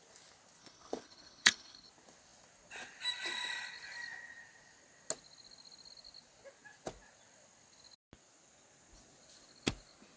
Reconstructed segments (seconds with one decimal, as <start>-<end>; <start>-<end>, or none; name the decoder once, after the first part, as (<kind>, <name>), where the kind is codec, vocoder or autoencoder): 0.6-1.9 (codec, HILCodec)